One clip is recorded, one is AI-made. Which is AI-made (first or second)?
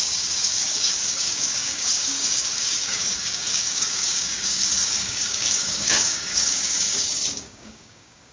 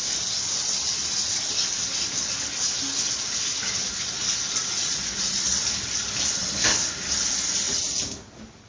first